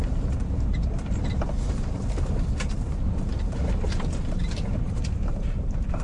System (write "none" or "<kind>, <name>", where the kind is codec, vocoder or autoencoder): vocoder, BigVGAN v2